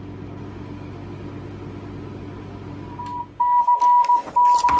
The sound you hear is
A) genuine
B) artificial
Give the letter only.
A